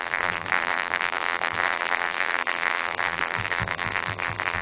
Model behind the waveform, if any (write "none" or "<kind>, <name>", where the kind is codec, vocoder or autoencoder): vocoder, BigVGAN v2